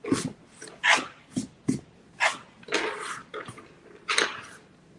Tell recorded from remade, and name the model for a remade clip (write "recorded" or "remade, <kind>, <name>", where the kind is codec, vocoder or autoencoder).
recorded